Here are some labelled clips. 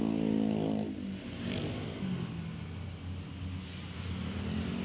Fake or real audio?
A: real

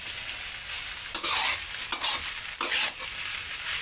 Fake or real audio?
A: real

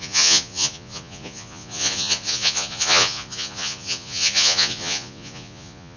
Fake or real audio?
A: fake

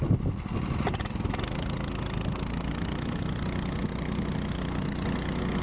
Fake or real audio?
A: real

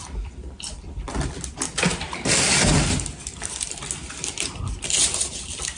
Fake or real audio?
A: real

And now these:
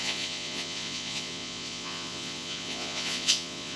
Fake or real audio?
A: fake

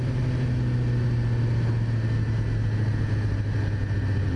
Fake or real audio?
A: real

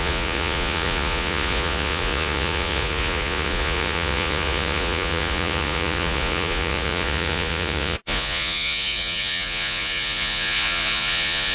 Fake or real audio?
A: fake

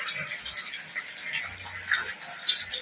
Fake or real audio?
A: real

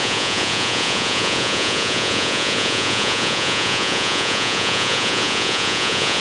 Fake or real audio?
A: fake